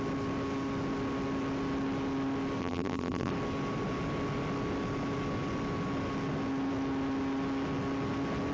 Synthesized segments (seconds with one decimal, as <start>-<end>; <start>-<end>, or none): 2.6-3.3